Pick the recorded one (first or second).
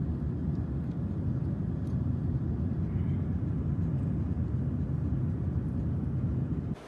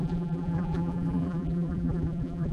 first